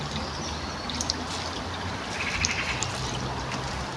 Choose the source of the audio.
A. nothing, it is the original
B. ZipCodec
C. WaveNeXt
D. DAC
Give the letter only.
A